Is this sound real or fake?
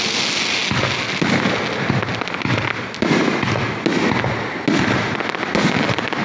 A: real